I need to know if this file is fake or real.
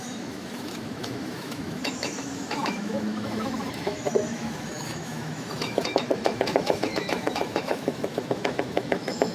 fake